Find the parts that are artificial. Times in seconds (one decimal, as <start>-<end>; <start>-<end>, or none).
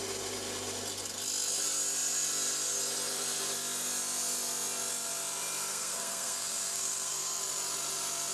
5.7-7.4